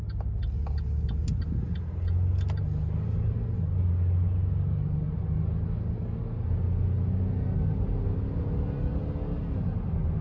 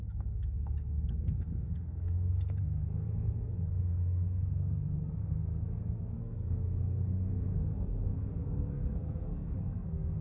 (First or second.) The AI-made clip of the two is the second